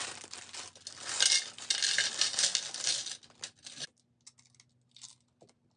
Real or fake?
real